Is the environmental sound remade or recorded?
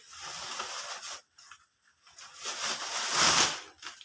recorded